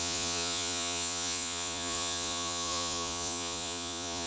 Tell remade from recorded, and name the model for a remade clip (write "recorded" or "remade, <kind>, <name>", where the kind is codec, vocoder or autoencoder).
remade, vocoder, Vocos